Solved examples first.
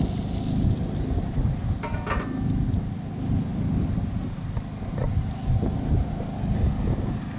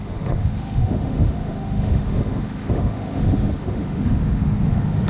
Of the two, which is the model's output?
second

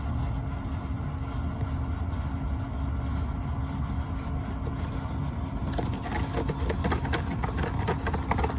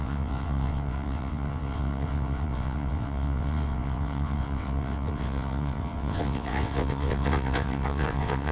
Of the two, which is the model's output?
second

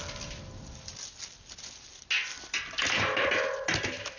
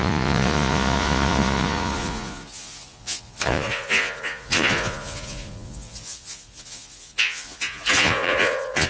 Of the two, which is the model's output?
second